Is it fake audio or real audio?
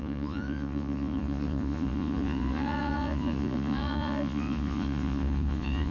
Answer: fake